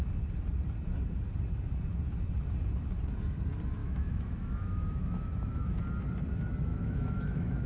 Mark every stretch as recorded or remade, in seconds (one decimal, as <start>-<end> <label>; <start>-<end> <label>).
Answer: 0.0-3.8 recorded; 3.8-5.8 remade; 5.8-6.7 recorded; 6.7-7.7 remade